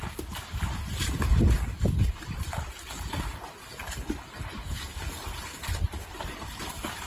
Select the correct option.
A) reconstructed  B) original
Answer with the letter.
A